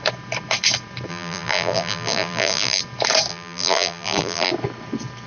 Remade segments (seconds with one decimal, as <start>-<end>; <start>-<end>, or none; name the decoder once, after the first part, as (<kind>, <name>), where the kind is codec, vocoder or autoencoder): 1.1-2.8 (vocoder, BigVGAN v2); 3.3-4.5